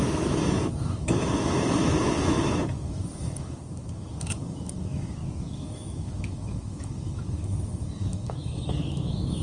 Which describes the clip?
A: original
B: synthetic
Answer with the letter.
B